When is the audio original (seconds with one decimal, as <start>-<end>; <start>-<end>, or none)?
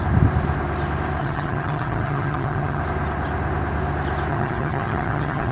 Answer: 0.0-1.2; 2.8-4.3